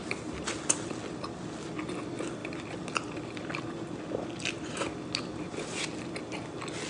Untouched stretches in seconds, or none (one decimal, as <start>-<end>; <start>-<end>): 0.0-6.9